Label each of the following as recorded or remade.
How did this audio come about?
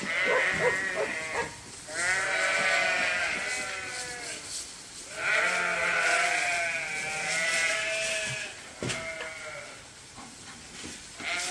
recorded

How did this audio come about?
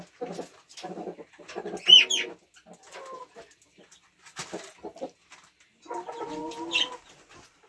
recorded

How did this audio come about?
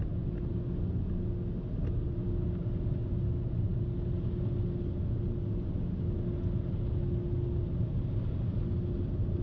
recorded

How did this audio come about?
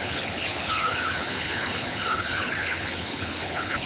remade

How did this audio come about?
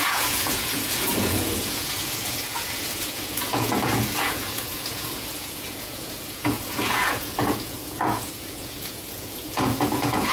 remade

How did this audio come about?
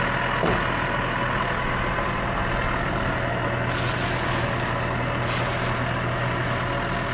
recorded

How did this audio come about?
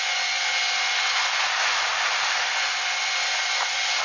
recorded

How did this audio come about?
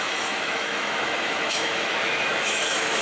remade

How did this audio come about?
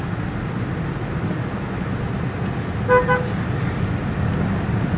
recorded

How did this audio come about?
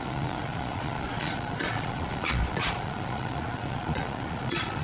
remade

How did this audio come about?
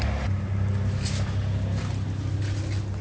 recorded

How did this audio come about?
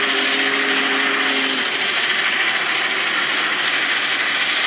recorded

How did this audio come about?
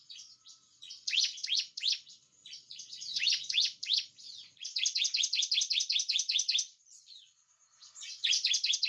remade